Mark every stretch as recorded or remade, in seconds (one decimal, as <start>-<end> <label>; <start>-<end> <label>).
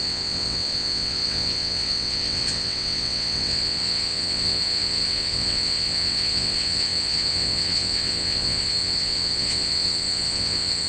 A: 0.0-10.9 remade